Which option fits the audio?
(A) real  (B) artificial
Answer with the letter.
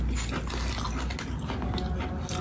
A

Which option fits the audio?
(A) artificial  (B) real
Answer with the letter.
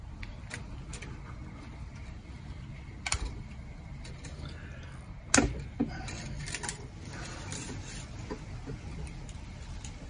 B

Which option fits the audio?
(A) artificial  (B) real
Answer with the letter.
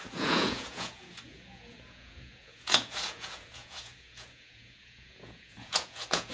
A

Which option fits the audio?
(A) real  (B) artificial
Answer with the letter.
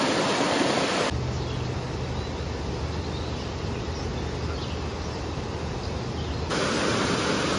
A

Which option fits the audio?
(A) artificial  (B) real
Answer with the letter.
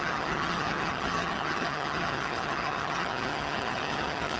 A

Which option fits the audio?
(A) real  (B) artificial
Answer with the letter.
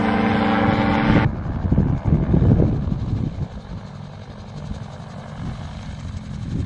A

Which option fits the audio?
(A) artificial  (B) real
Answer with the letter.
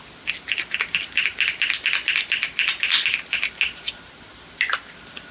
B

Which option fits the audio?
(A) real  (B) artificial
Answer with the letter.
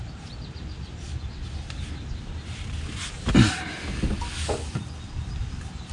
A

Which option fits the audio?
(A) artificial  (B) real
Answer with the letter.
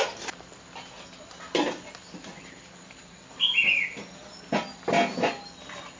B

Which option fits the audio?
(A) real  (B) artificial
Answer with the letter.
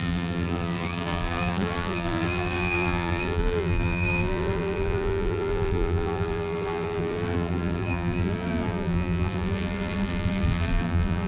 B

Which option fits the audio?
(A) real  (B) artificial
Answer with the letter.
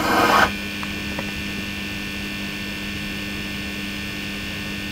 A